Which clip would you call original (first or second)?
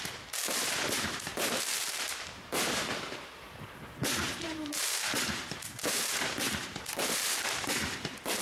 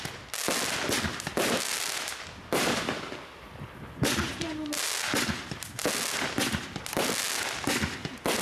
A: second